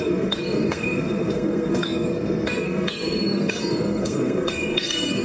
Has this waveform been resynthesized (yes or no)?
yes